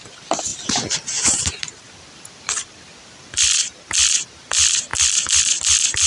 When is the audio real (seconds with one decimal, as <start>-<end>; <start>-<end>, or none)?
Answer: 0.0-0.5; 3.7-4.9; 5.6-6.1